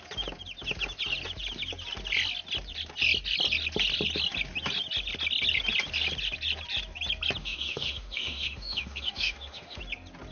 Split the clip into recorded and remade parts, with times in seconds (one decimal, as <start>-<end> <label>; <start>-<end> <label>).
0.0-7.4 recorded; 7.4-9.8 remade; 9.8-10.3 recorded